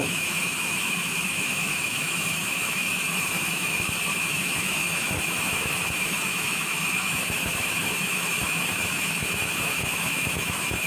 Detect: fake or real fake